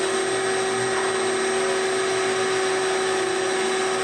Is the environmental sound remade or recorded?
recorded